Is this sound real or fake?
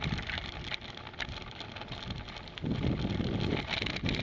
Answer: real